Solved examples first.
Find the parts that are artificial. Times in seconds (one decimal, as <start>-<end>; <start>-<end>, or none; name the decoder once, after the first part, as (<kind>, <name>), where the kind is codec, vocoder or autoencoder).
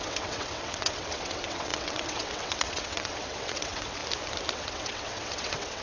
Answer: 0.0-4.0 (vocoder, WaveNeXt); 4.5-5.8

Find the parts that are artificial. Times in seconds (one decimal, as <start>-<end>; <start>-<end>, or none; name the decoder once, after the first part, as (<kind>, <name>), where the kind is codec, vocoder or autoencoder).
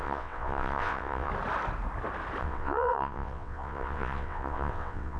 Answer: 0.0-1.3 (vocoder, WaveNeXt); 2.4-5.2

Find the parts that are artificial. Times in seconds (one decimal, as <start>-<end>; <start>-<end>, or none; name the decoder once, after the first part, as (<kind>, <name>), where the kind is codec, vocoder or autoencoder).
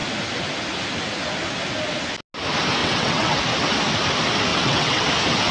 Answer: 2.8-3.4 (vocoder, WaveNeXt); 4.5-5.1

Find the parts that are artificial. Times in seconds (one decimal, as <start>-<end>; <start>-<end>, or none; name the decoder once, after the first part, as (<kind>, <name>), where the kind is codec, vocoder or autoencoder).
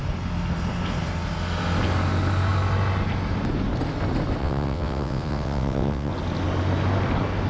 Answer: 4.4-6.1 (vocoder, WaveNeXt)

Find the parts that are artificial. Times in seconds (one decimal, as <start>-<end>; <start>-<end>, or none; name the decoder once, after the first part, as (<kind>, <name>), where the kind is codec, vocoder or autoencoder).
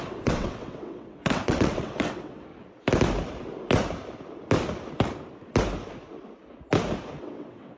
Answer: 0.0-2.5 (vocoder, WaveNeXt); 7.2-7.8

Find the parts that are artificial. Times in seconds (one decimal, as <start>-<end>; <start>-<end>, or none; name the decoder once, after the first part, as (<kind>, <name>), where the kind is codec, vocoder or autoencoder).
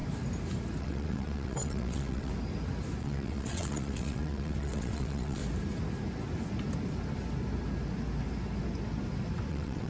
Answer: 0.8-2.3 (vocoder, WaveNeXt); 3.0-5.4; 9.5-9.9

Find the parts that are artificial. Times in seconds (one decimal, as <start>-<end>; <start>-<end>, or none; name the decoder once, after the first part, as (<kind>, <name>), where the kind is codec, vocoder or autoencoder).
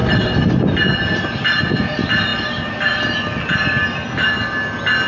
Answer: none